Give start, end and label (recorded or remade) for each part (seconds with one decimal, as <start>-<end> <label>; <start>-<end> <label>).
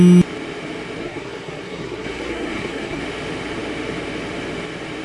0.0-1.0 recorded; 1.0-3.0 remade; 3.0-5.0 recorded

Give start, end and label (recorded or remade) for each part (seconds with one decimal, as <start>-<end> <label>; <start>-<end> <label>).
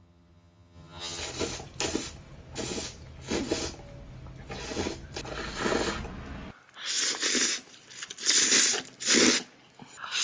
0.0-1.2 remade; 1.2-10.2 recorded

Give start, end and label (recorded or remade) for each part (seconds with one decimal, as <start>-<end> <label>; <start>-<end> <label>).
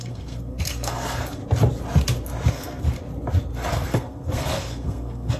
0.0-1.4 remade; 1.4-2.5 recorded; 2.5-3.0 remade; 3.0-3.7 recorded; 3.7-5.4 remade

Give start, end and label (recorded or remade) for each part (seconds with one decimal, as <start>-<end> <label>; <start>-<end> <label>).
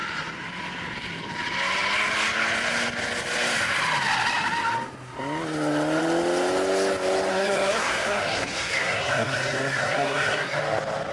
0.0-7.3 recorded; 7.3-10.6 remade; 10.6-11.1 recorded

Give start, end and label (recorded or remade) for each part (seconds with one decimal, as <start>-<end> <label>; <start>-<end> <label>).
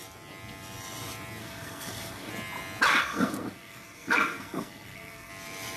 0.0-1.4 recorded; 1.4-2.3 remade; 2.3-2.9 recorded; 2.9-5.3 remade; 5.3-5.8 recorded